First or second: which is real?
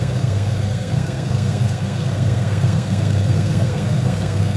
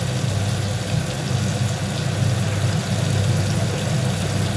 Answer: second